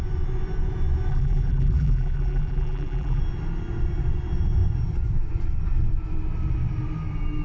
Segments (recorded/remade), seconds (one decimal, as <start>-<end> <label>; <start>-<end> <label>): 0.0-1.1 recorded; 1.1-3.2 remade; 3.2-7.4 recorded